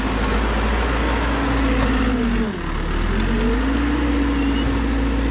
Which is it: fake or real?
real